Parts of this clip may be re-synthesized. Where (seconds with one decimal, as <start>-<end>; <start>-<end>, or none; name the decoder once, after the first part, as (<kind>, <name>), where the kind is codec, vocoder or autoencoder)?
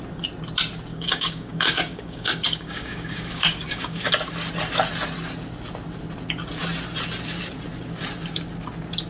0.9-4.1 (codec, DAC)